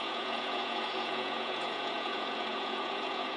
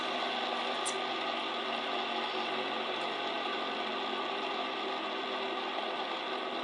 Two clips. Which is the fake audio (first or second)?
first